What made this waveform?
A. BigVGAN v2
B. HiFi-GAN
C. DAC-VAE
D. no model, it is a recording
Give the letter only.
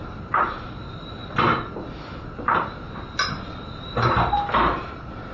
D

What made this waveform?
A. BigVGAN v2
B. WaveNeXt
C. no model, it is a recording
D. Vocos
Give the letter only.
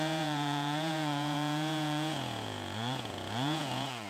D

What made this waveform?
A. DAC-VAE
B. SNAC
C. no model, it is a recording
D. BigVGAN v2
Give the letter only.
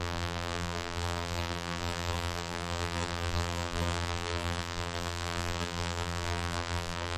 D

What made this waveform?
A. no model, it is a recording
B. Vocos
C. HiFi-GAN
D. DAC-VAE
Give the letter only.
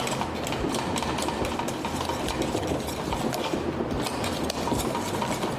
A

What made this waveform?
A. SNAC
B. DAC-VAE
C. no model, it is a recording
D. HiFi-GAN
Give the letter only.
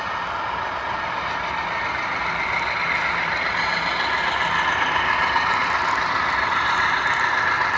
C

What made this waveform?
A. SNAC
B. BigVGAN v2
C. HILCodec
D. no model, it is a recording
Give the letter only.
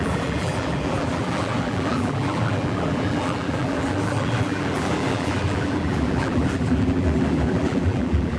B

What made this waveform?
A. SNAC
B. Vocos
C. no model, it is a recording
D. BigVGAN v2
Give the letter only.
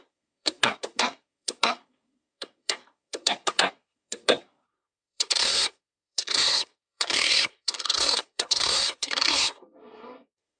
A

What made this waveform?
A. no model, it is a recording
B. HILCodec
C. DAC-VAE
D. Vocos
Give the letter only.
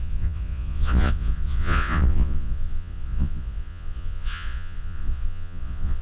D